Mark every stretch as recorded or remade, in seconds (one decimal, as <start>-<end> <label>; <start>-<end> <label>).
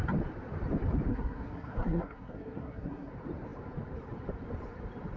0.0-1.1 recorded; 1.1-3.1 remade; 3.1-5.2 recorded